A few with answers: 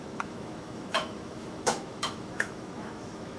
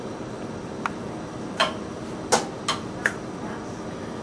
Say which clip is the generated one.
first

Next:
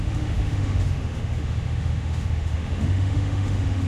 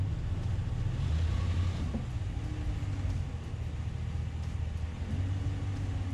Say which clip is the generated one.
first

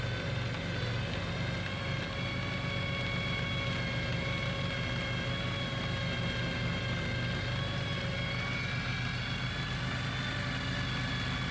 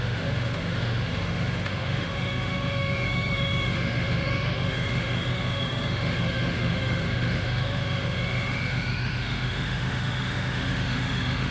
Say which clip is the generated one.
second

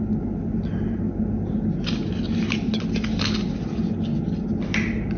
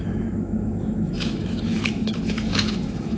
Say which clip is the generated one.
second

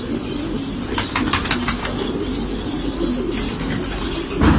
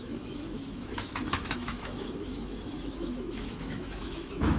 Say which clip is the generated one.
second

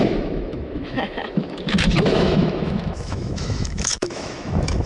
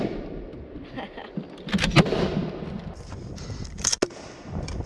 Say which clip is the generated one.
first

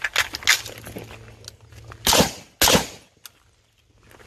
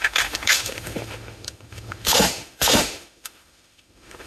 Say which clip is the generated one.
second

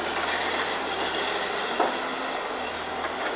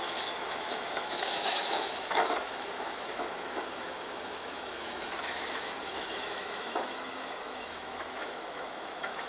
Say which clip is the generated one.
second